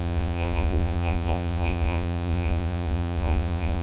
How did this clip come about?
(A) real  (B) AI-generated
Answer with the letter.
B